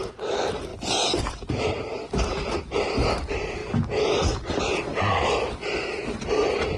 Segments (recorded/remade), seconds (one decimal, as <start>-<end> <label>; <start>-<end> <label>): 0.0-3.6 remade; 3.6-4.6 recorded; 4.6-6.8 remade